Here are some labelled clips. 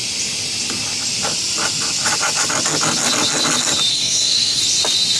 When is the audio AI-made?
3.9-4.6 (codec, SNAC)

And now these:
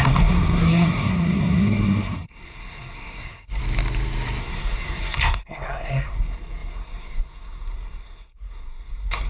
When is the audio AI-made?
0.0-3.6 (codec, SNAC); 4.4-9.3